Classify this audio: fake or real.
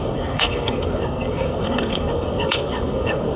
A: fake